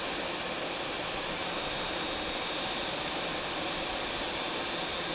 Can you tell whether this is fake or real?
real